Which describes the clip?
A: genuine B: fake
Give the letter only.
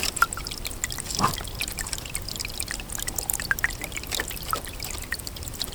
B